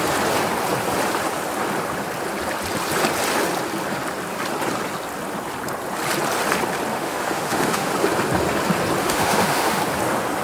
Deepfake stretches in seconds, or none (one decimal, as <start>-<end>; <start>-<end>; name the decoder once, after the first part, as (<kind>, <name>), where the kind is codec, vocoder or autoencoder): 6.9-7.9 (autoencoder, DAC-VAE); 9.0-9.8